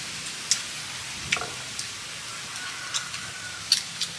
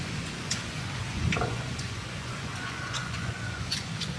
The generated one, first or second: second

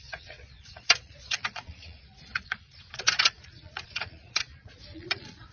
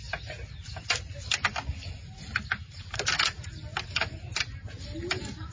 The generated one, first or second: first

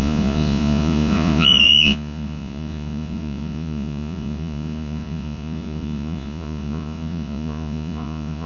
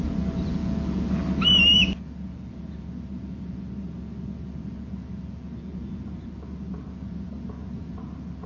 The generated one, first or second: first